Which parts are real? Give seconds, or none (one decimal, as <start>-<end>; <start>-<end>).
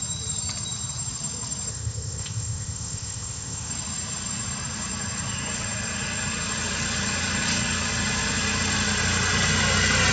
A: 0.0-1.7; 3.7-10.1